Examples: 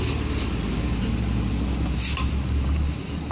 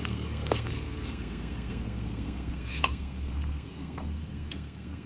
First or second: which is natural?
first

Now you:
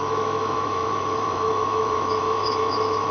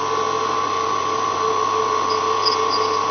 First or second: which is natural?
second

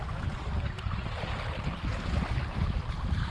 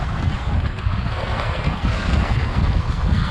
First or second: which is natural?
first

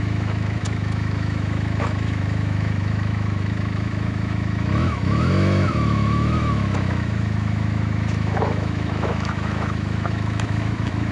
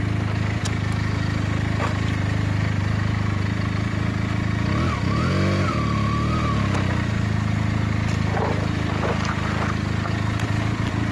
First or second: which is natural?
second